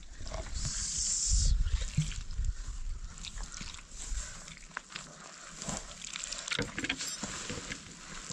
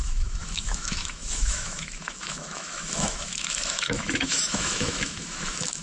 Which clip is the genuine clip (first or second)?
first